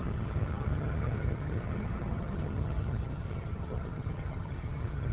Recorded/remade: remade